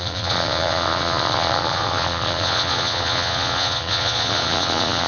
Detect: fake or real fake